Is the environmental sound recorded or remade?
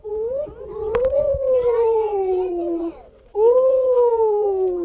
remade